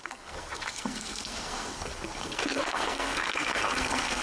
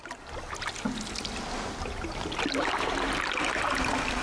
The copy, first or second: first